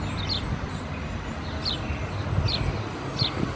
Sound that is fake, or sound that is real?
real